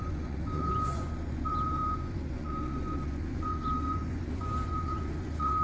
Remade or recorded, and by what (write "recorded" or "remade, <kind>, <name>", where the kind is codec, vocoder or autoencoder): remade, vocoder, Vocos